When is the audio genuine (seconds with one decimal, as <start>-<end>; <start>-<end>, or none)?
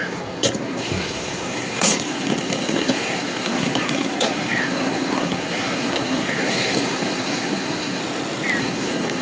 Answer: 8.0-8.6